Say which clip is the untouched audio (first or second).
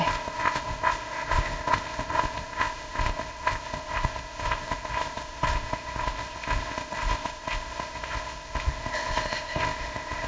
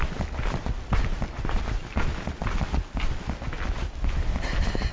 second